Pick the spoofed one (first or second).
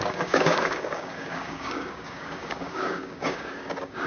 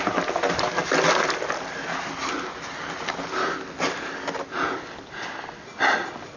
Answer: first